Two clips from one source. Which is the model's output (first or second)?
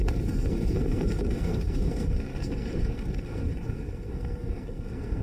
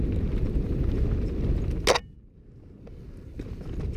first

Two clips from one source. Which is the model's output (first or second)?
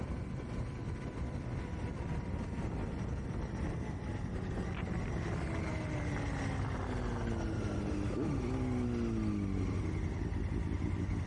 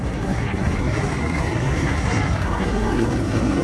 second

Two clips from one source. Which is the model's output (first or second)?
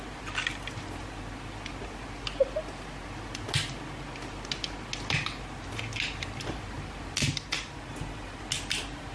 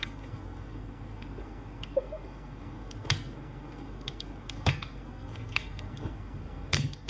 second